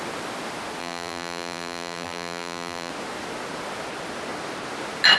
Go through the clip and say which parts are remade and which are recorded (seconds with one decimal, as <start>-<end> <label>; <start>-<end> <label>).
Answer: 0.0-0.8 recorded; 0.8-2.9 remade; 2.9-5.2 recorded